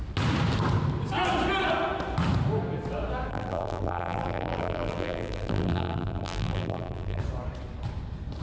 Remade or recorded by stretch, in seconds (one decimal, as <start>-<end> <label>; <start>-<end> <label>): 0.0-3.3 recorded; 3.3-7.2 remade; 7.2-8.4 recorded